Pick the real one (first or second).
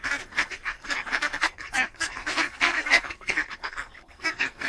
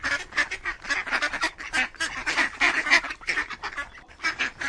second